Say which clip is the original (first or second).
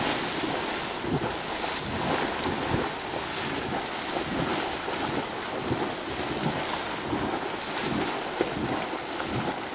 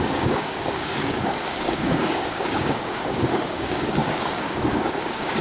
first